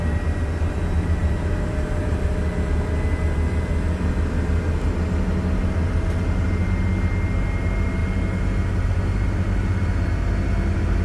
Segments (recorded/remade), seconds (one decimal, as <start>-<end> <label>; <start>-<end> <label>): 0.0-1.2 recorded; 1.2-2.3 remade; 2.3-11.0 recorded